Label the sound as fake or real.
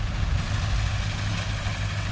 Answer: real